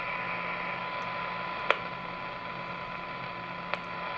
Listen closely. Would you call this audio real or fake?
real